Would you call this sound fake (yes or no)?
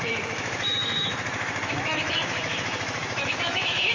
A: yes